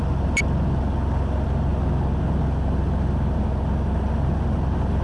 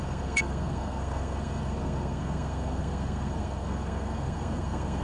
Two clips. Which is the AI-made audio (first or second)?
second